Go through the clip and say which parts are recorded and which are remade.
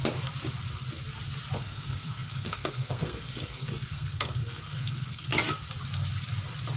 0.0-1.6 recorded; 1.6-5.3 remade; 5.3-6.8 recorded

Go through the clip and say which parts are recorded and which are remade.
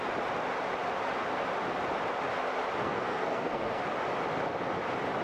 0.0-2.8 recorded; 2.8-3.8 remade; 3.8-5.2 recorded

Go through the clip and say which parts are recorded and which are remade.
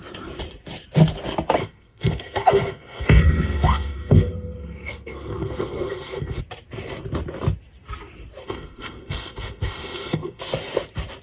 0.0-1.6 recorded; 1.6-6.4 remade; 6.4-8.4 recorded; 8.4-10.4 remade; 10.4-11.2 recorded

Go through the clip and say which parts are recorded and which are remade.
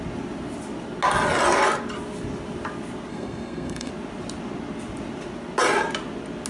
0.0-3.1 recorded; 3.1-3.9 remade; 3.9-6.5 recorded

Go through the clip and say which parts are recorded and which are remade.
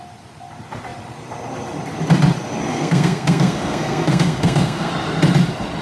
0.0-2.7 recorded; 2.7-4.9 remade; 4.9-5.8 recorded